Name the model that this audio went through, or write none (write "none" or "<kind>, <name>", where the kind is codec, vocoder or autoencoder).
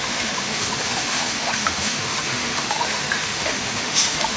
autoencoder, DAC-VAE